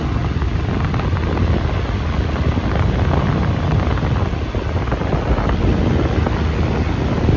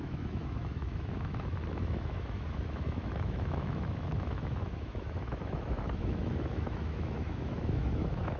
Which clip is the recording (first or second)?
first